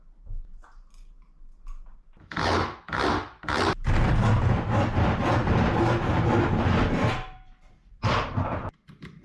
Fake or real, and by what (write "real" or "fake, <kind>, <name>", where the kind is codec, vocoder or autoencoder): real